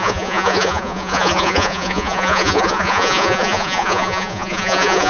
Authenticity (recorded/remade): remade